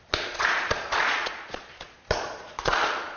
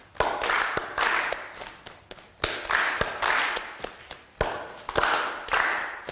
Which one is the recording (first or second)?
second